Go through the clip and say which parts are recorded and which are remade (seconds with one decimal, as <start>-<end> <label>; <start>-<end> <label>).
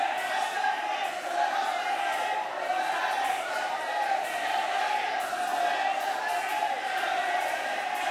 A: 0.0-3.9 remade; 3.9-8.1 recorded